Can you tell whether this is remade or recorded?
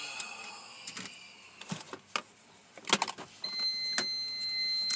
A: recorded